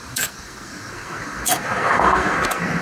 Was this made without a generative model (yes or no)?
no